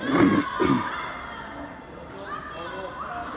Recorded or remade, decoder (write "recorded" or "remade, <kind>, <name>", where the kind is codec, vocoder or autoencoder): recorded